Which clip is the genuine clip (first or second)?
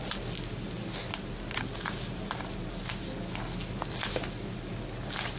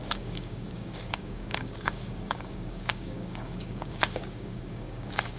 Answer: first